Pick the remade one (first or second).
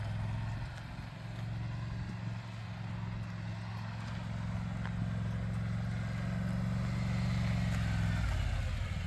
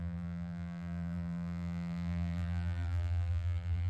second